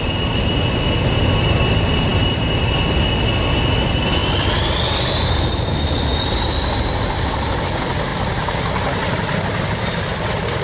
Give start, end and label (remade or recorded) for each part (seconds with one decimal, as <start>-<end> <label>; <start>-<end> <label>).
0.0-4.2 recorded; 4.2-7.6 remade; 7.6-8.1 recorded; 8.1-10.6 remade